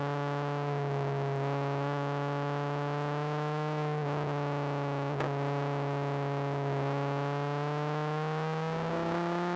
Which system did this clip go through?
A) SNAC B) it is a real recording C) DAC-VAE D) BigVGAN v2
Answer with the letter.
B